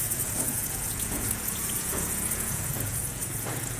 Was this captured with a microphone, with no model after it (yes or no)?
no